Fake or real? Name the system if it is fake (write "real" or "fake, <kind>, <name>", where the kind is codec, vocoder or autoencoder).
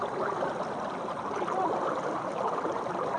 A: real